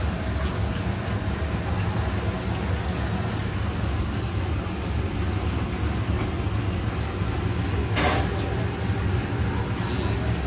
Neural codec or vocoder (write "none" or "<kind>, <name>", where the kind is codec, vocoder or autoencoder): none